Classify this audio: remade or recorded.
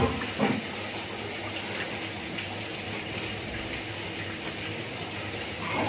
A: recorded